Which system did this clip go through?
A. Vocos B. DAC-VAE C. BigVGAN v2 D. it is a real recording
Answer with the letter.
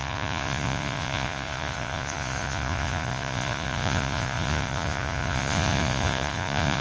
A